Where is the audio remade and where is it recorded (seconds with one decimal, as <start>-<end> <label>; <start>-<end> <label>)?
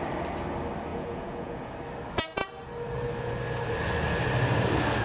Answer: 0.0-0.9 recorded; 0.9-1.7 remade; 1.7-5.0 recorded